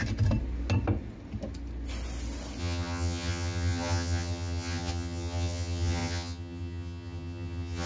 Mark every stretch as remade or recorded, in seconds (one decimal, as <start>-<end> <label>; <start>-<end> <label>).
0.0-2.6 recorded; 2.6-7.9 remade